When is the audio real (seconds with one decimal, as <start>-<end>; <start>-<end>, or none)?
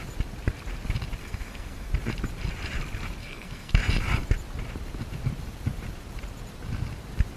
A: 0.0-1.2; 1.9-3.2; 3.8-7.4